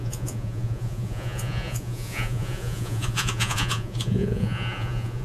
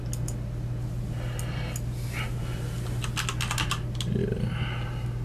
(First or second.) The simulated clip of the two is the first